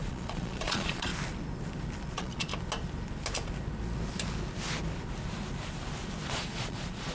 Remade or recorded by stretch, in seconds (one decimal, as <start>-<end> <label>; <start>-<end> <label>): 0.0-1.1 remade; 1.1-2.1 recorded; 2.1-2.5 remade; 2.5-6.3 recorded; 6.3-7.1 remade